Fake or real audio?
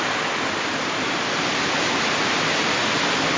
real